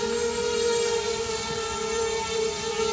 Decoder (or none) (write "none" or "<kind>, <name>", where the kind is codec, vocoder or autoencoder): vocoder, BigVGAN v2